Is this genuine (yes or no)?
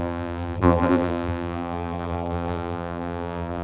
no